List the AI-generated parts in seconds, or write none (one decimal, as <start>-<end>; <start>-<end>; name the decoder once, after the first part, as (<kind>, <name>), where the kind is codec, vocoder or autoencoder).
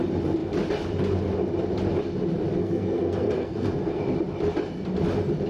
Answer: 2.6-4.0 (codec, SNAC)